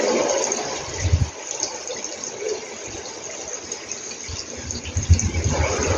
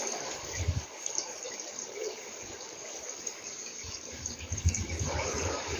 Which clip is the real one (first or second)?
first